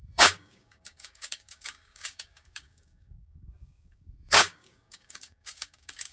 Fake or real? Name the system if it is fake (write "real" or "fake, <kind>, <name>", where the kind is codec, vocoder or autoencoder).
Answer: fake, codec, DAC